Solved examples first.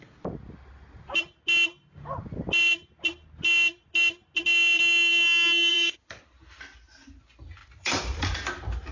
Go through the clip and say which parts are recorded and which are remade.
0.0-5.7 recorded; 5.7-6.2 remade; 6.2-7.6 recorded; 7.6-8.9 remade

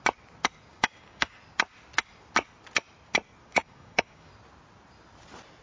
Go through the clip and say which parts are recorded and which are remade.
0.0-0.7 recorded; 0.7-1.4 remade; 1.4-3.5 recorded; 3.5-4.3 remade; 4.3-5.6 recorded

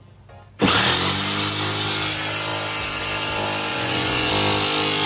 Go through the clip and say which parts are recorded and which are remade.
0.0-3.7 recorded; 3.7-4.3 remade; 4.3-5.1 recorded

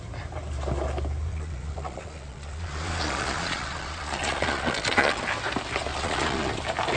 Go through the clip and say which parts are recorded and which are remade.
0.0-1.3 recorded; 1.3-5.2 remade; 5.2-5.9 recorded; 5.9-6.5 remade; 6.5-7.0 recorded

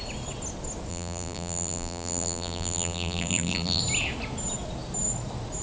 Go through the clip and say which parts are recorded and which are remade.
0.0-0.9 recorded; 0.9-3.8 remade; 3.8-5.6 recorded